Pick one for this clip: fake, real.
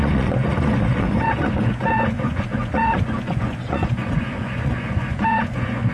fake